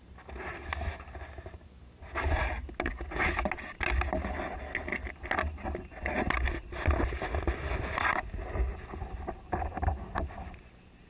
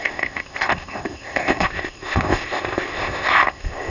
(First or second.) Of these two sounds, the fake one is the second